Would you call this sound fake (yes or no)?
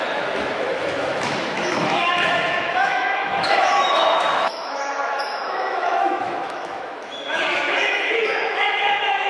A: yes